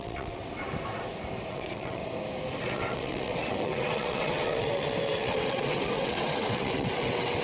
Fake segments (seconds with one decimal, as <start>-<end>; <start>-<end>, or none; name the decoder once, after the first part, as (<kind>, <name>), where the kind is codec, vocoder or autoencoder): 0.0-0.4 (vocoder, WaveNeXt); 1.5-2.0; 2.6-7.4